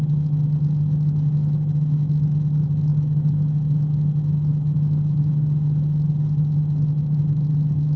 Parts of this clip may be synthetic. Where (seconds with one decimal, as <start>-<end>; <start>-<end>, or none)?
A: none